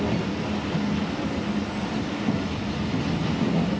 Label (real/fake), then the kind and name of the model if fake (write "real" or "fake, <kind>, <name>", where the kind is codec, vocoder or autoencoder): real